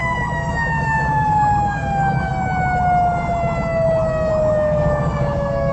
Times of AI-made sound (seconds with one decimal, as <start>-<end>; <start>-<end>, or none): 0.5-2.3; 4.3-5.7